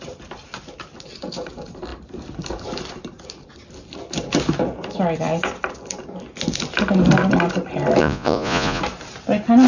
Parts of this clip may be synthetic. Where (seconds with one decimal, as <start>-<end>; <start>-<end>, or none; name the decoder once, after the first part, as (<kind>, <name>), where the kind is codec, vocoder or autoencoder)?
8.0-8.8 (vocoder, Vocos)